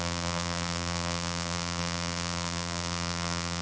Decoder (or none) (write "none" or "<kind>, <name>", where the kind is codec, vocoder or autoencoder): vocoder, BigVGAN v2